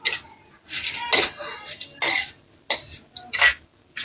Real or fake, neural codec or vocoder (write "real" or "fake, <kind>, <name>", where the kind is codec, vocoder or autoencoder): real